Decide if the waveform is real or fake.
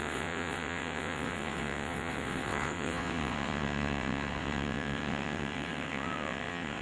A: fake